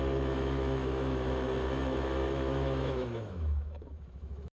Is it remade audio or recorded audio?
remade